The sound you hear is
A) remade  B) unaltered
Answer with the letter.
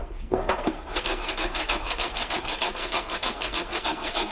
A